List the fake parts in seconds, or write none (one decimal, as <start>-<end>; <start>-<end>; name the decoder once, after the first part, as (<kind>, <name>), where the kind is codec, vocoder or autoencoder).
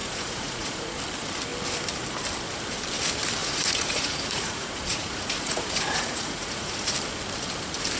0.0-1.0 (vocoder, Vocos); 3.4-6.9